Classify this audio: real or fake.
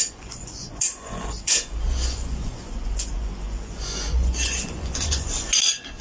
fake